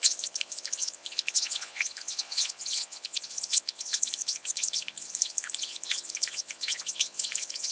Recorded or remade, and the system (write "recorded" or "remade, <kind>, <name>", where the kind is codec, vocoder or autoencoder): remade, vocoder, Vocos